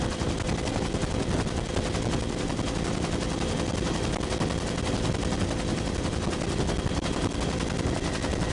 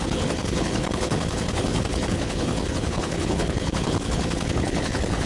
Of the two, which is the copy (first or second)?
second